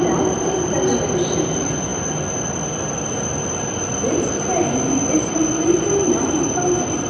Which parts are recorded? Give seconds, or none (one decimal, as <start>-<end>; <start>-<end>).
0.0-7.1